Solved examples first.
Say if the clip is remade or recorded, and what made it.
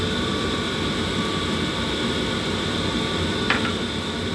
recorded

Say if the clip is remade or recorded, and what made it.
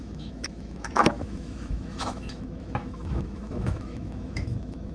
remade, autoencoder, DAC-VAE